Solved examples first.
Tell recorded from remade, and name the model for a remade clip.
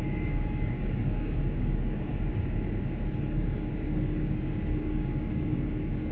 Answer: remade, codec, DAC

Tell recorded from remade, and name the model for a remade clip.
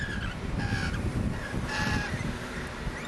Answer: recorded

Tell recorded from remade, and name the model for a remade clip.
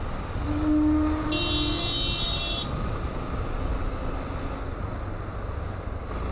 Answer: recorded